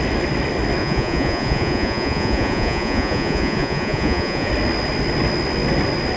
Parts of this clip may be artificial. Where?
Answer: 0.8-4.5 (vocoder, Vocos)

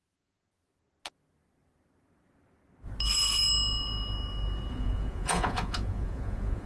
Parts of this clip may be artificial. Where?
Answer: 0.0-0.7 (vocoder, Vocos); 4.7-6.7

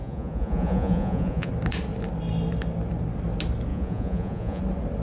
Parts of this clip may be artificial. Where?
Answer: 0.0-1.5 (vocoder, Vocos); 3.7-4.6

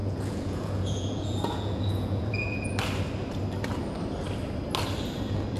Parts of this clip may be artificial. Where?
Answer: 0.0-2.7 (vocoder, Vocos)